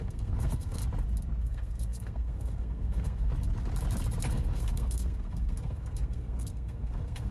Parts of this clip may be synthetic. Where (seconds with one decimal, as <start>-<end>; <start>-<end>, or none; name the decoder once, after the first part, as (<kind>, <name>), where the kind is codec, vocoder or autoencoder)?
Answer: 0.0-0.8 (codec, SNAC); 1.4-3.3; 4.3-7.3